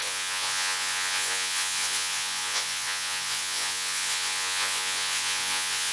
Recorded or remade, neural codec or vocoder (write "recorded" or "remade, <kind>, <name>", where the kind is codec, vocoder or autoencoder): remade, vocoder, Vocos